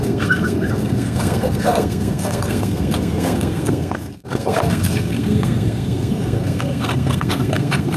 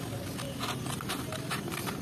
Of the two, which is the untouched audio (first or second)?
second